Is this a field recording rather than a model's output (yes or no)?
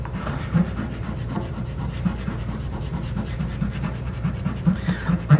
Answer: no